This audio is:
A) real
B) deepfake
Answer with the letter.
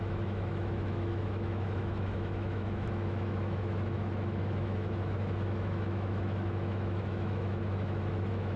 B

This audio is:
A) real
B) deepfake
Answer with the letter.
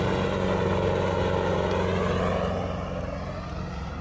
A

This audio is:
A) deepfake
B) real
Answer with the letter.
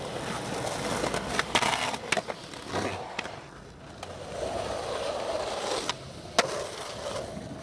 B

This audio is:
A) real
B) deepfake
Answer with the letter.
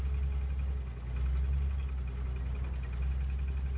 A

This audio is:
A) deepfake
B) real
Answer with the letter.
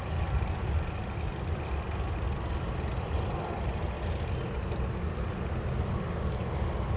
B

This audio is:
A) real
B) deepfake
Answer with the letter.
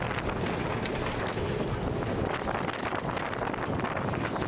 A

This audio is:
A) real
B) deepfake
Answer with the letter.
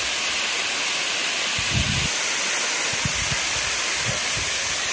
A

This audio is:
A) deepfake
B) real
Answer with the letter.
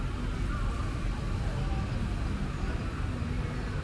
B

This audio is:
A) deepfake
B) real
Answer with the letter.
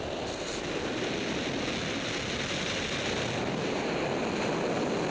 B